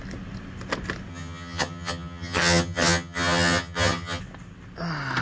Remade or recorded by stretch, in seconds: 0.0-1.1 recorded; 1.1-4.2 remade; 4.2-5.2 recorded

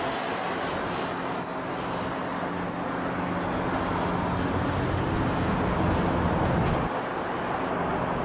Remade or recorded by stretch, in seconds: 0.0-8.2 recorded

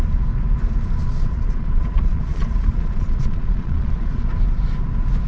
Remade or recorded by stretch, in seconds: 0.0-1.0 recorded; 1.0-4.2 remade; 4.2-5.3 recorded